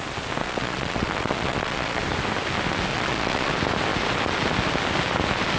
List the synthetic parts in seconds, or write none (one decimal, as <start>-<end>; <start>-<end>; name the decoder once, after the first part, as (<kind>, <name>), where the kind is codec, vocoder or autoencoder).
0.4-2.0 (vocoder, Vocos); 2.9-3.5